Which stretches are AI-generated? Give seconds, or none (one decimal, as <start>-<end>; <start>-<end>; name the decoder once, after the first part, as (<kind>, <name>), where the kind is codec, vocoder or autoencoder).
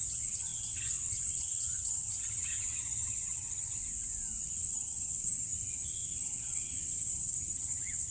0.0-3.8 (vocoder, HiFi-GAN); 4.4-8.1